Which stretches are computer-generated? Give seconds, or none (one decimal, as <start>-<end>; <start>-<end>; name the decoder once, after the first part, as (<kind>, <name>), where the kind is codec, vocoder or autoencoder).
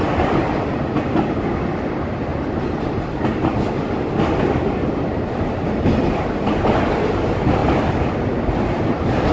0.0-2.3 (vocoder, BigVGAN v2); 3.5-9.3